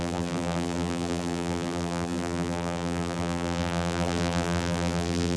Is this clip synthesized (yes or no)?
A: yes